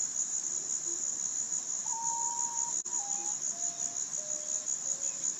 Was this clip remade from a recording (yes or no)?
no